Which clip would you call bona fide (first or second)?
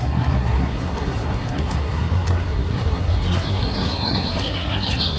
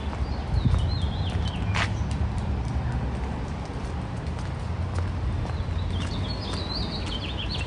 second